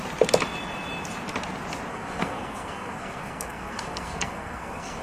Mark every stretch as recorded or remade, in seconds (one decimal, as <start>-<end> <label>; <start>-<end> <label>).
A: 0.0-1.9 recorded; 1.9-5.0 remade